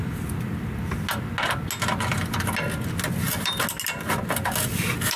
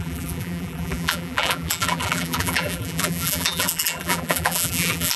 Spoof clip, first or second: second